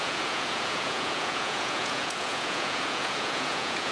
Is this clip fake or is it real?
fake